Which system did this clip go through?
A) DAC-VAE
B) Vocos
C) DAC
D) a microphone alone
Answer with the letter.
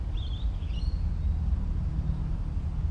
D